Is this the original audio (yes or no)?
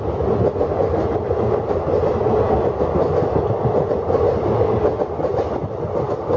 yes